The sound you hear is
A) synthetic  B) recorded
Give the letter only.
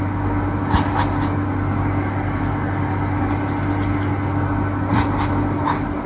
B